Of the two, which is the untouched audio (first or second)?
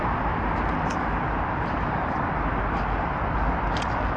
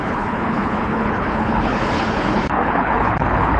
first